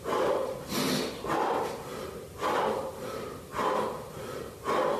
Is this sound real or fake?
real